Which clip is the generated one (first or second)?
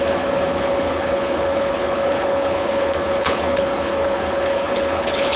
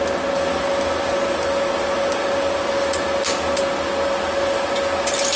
first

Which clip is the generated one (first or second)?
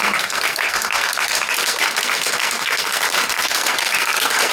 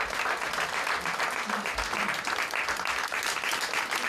first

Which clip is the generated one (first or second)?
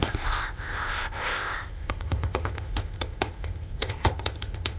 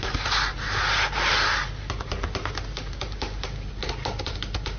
first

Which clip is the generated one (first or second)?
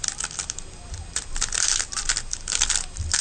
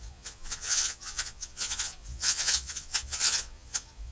second